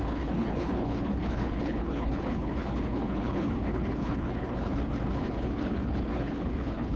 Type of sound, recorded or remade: remade